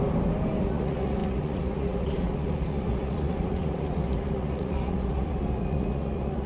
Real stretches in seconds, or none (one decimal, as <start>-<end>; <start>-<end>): 0.0-0.6